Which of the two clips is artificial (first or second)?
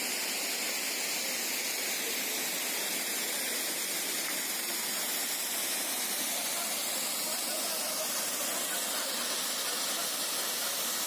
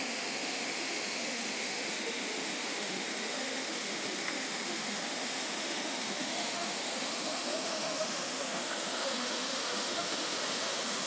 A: second